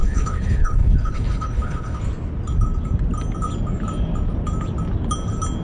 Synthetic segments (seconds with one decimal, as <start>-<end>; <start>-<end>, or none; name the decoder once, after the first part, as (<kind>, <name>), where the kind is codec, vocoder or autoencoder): 0.0-2.0 (codec, HILCodec)